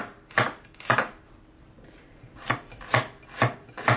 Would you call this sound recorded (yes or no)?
yes